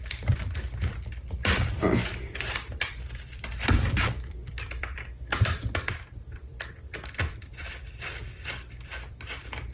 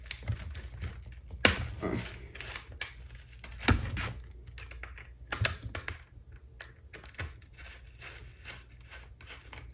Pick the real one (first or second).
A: second